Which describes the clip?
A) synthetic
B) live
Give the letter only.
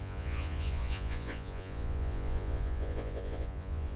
A